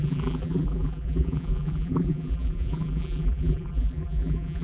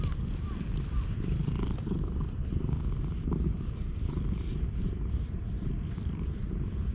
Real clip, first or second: second